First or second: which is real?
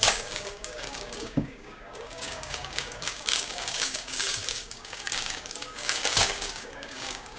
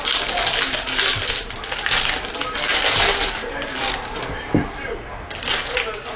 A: second